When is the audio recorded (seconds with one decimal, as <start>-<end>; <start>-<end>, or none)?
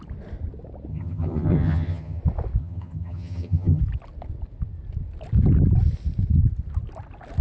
0.0-0.9; 2.2-2.6; 3.8-7.4